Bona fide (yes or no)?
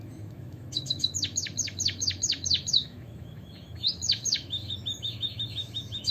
no